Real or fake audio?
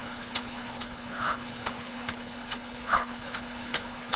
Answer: fake